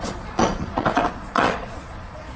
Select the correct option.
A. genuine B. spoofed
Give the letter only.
B